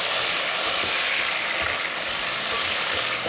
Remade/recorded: recorded